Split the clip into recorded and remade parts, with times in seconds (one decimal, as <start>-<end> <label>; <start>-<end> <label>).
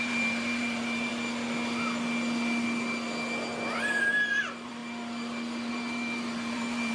0.0-1.1 remade; 1.1-3.8 recorded; 3.8-4.8 remade; 4.8-5.7 recorded; 5.7-6.9 remade